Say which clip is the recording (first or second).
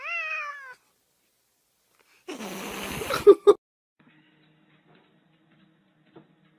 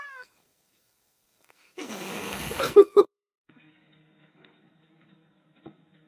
first